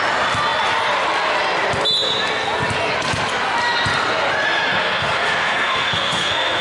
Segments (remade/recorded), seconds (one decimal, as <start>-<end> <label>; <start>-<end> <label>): 0.0-4.8 recorded; 4.8-6.6 remade